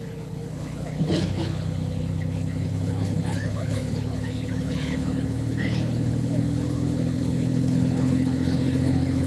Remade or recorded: remade